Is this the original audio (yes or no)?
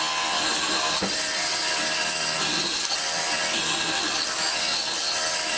yes